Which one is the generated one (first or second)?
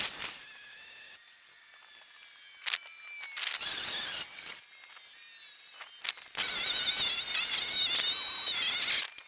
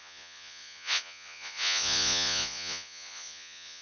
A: second